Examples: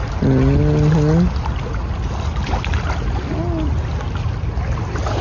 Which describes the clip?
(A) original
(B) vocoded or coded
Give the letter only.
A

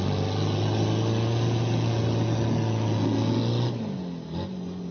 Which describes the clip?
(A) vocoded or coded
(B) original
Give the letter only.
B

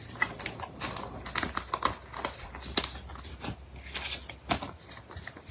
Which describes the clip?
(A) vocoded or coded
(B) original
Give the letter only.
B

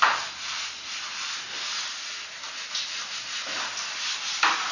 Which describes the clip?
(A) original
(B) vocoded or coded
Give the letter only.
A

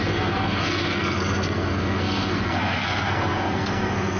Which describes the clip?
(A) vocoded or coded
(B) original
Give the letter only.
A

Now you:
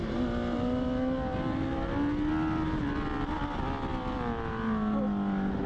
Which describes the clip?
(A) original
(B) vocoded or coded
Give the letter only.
A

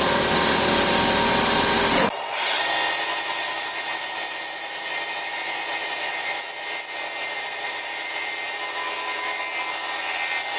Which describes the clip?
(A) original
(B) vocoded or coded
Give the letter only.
A